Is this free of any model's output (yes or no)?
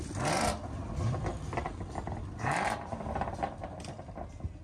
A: yes